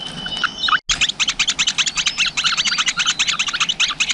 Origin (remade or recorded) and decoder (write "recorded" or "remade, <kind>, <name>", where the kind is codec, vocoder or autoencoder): recorded